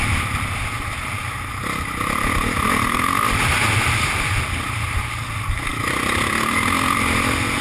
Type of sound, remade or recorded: recorded